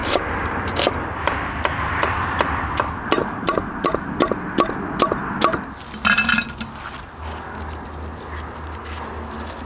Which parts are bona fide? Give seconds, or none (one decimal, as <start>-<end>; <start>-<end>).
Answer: 0.5-3.2; 3.9-9.7